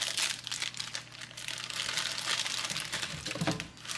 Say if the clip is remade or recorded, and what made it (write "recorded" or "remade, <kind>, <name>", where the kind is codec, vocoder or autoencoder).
recorded